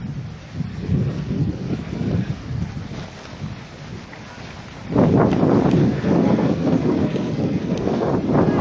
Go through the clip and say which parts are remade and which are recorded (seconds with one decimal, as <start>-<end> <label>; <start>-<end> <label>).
0.0-0.7 recorded; 0.7-2.6 remade; 2.6-5.8 recorded; 5.8-8.1 remade; 8.1-8.6 recorded